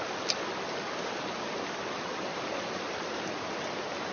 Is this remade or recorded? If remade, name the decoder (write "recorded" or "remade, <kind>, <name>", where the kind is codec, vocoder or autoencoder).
recorded